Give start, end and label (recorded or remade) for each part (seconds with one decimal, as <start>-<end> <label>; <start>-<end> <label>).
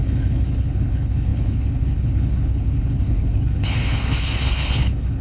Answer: 0.0-5.2 remade